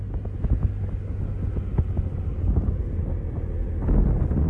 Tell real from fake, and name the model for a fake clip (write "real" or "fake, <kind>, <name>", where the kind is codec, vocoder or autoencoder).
real